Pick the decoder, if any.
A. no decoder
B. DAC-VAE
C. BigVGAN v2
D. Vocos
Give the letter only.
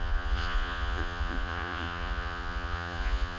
D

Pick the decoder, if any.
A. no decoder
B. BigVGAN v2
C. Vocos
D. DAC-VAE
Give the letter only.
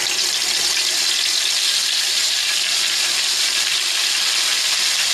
A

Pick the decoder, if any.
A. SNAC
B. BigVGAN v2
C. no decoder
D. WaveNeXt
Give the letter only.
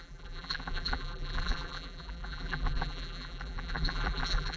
B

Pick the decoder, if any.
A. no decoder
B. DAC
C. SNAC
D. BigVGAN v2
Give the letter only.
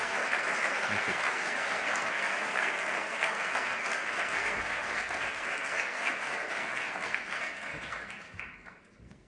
C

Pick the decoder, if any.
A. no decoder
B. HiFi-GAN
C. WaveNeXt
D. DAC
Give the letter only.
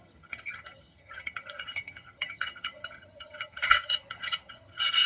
B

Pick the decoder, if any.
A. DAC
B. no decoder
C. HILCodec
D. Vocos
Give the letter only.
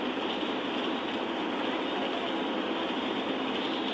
B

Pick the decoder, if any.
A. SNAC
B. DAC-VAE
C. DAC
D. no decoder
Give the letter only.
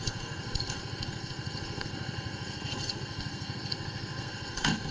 A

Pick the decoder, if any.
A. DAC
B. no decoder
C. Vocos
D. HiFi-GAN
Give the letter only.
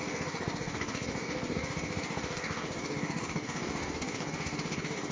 A